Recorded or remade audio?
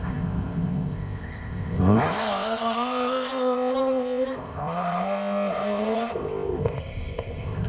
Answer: remade